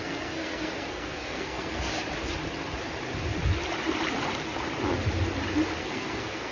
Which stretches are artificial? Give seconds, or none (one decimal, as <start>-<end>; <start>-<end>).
0.0-1.9; 5.8-6.5